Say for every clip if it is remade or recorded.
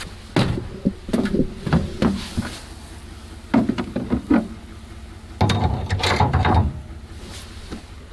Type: recorded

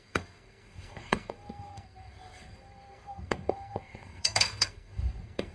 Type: remade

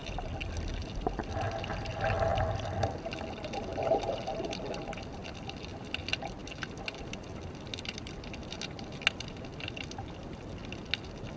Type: recorded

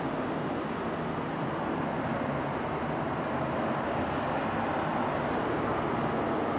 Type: recorded